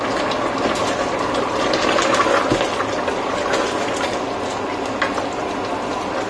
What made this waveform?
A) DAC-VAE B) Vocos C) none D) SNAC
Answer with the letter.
C